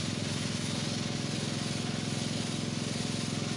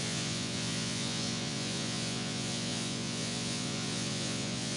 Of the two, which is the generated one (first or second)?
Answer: second